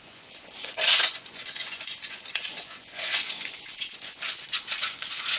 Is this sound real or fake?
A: fake